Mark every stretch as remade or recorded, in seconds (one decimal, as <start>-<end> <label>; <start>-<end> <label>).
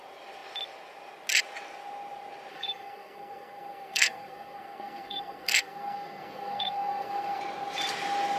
0.0-2.5 recorded; 2.5-7.4 remade; 7.4-8.4 recorded